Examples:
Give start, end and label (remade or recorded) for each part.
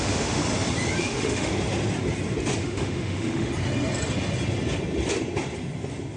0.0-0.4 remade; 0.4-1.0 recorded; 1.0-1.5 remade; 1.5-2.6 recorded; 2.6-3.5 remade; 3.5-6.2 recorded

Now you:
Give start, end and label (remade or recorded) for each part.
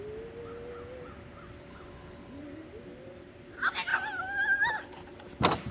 0.0-1.7 recorded; 1.7-2.4 remade; 2.4-5.7 recorded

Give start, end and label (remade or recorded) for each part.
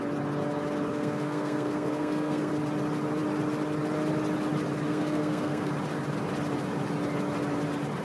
0.0-0.9 recorded; 0.9-2.5 remade; 2.5-4.9 recorded; 4.9-5.7 remade; 5.7-8.0 recorded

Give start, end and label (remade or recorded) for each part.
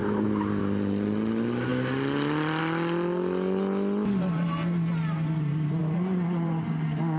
0.0-0.6 remade; 0.6-1.7 recorded; 1.7-2.6 remade; 2.6-5.8 recorded; 5.8-6.7 remade; 6.7-7.2 recorded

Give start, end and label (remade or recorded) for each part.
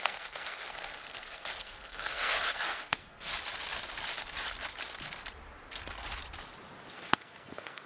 0.0-3.3 remade; 3.3-6.9 recorded; 6.9-7.9 remade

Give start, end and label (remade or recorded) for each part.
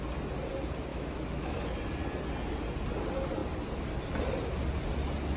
0.0-0.9 recorded; 0.9-1.5 remade; 1.5-5.4 recorded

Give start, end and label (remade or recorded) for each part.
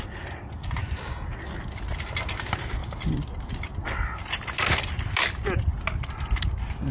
0.0-6.9 recorded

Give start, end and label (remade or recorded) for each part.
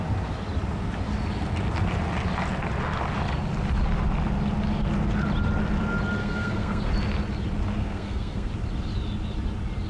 0.0-6.2 recorded; 6.2-6.9 remade; 6.9-7.8 recorded; 7.8-8.5 remade; 8.5-9.9 recorded